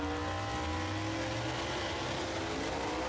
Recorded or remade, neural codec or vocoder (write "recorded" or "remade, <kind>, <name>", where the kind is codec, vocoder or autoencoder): recorded